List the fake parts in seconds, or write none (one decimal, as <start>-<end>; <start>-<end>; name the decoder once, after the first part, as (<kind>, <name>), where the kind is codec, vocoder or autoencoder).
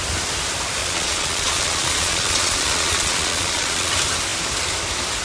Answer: 0.8-3.9 (vocoder, Vocos)